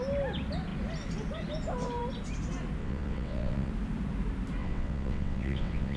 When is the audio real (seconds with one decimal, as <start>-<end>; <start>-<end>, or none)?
0.0-2.8; 3.7-4.6